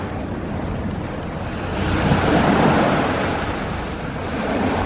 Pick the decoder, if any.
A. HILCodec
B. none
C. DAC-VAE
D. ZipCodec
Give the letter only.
B